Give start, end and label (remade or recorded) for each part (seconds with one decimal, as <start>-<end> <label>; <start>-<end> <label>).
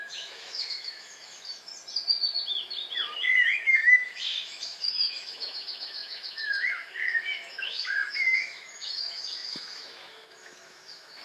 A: 0.0-1.7 remade; 1.7-3.1 recorded; 3.1-11.2 remade